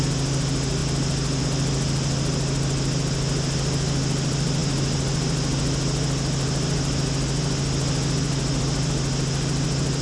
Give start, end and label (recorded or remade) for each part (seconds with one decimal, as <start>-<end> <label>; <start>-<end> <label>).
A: 0.0-10.0 recorded